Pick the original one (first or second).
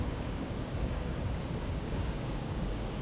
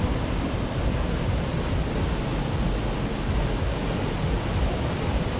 second